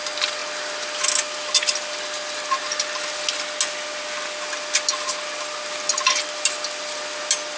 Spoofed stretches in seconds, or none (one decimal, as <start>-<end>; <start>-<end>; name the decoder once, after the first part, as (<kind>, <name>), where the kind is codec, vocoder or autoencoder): none